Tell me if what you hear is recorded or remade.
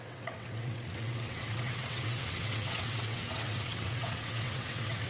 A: remade